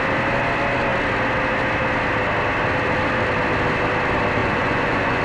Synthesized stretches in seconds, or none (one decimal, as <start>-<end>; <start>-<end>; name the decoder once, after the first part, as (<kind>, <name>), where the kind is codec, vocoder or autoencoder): 4.4-5.2 (vocoder, Vocos)